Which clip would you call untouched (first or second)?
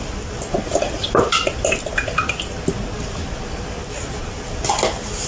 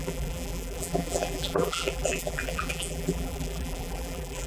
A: first